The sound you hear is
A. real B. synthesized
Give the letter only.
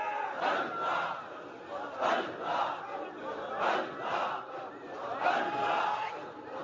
A